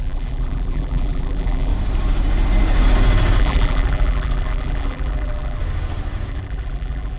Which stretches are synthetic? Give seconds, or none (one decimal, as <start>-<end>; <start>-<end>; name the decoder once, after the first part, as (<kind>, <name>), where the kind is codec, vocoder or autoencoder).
0.0-1.7 (vocoder, BigVGAN v2); 3.4-5.6; 6.3-7.2